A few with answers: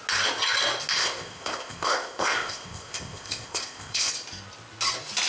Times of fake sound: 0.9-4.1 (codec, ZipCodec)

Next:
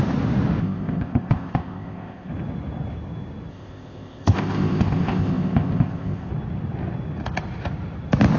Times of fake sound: 0.6-2.3 (codec, ZipCodec); 3.5-6.3

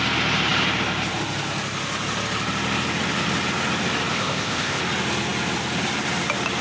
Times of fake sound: 4.1-4.8 (codec, ZipCodec)

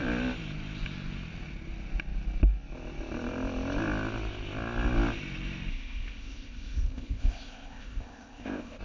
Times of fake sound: 5.7-8.8 (codec, ZipCodec)

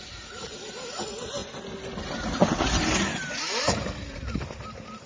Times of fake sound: none